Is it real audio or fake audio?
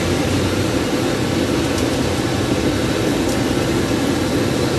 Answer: real